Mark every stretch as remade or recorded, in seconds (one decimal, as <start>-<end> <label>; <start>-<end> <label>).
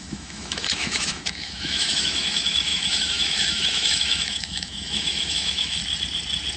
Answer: 0.0-5.8 remade; 5.8-6.6 recorded